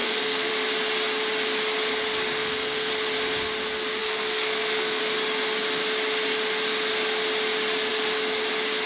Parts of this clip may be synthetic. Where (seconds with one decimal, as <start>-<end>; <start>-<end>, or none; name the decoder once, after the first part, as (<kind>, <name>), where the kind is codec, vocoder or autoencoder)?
0.0-0.5 (codec, SNAC); 2.3-2.9; 4.0-5.0